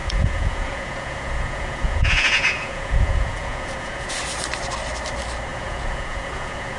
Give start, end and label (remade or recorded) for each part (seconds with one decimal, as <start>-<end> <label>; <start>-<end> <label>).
0.0-4.1 remade; 4.1-5.5 recorded; 5.5-6.8 remade